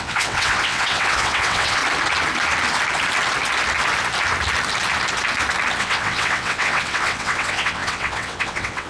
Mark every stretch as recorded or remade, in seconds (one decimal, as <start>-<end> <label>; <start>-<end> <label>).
0.0-1.8 remade; 1.8-5.8 recorded; 5.8-8.9 remade